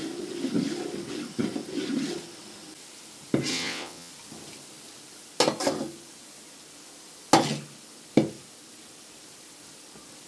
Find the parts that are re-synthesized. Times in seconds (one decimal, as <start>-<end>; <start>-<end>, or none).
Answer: 3.5-4.1